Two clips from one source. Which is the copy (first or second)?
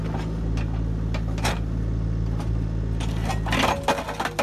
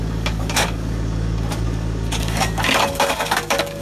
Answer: second